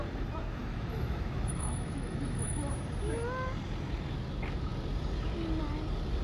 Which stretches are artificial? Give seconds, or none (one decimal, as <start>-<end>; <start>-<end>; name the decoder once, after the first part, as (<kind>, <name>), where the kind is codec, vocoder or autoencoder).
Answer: 0.6-2.7 (autoencoder, DAC-VAE)

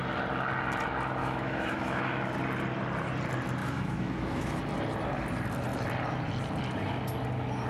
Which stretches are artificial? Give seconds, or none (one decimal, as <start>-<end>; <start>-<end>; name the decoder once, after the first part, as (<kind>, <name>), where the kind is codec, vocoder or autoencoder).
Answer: 1.2-2.2 (autoencoder, DAC-VAE); 3.6-4.6

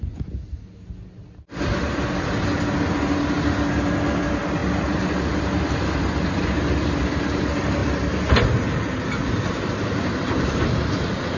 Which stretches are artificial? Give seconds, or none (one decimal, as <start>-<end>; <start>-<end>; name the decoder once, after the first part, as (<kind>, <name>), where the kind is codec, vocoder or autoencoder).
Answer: none

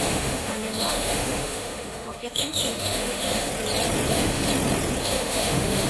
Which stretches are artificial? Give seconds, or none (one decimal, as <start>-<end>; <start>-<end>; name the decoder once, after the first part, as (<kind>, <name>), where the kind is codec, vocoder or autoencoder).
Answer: 0.0-3.5 (autoencoder, DAC-VAE); 4.1-4.5; 5.0-5.9

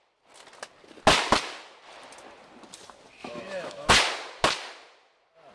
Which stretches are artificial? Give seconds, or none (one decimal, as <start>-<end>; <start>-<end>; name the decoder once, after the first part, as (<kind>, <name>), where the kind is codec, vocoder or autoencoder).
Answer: 3.2-3.9 (autoencoder, DAC-VAE)